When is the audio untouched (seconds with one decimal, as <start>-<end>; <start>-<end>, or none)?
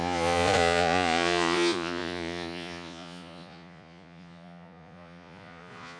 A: none